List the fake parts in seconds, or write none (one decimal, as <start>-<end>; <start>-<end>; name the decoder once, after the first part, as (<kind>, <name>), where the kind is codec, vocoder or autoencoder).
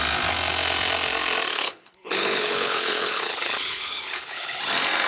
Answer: 1.5-4.6 (codec, HILCodec)